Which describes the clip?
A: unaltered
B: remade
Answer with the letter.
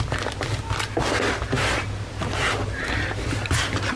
A